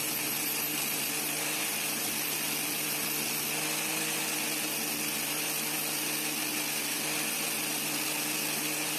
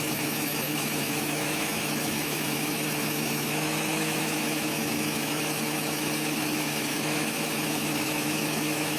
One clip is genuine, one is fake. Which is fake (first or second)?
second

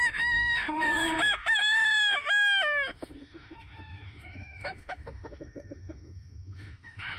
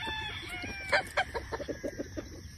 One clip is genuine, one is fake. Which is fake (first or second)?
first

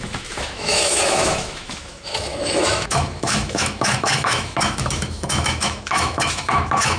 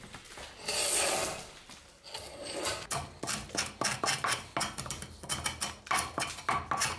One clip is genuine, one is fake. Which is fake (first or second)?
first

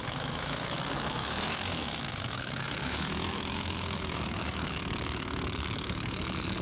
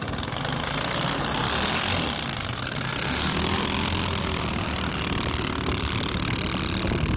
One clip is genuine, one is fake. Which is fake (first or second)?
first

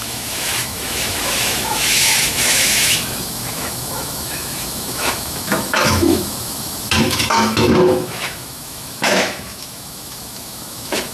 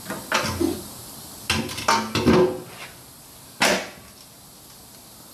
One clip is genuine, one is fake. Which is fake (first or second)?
first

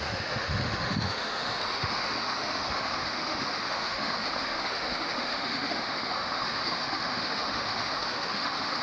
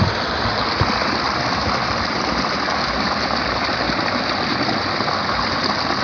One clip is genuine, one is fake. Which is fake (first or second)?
first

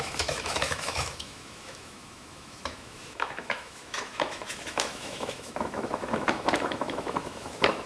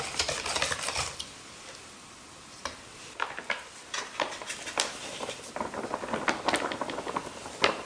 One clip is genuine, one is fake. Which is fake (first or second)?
first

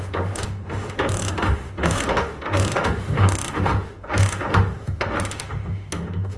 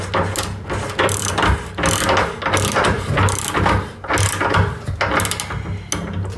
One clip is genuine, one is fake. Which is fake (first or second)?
first